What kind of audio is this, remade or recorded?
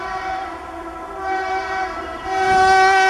remade